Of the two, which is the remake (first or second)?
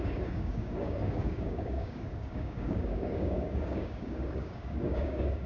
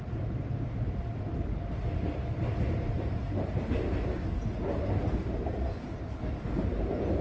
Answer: first